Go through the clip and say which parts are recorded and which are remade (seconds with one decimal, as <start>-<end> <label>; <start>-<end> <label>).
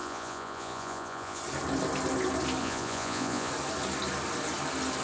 0.0-1.4 remade; 1.4-2.6 recorded; 2.6-3.5 remade; 3.5-5.0 recorded